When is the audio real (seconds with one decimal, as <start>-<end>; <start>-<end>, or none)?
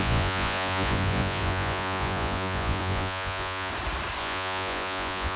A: 3.7-4.2